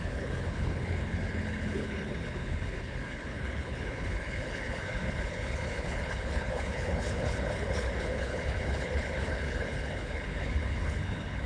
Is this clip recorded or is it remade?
remade